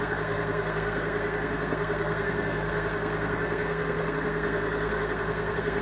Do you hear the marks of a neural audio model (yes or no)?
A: yes